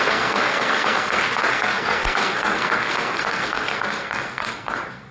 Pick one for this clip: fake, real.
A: fake